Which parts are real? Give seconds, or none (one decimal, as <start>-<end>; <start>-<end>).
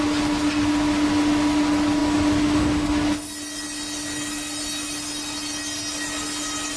0.0-6.8